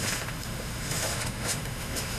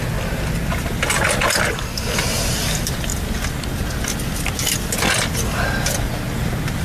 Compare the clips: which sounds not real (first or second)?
first